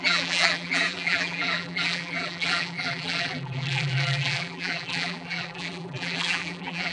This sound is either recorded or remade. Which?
remade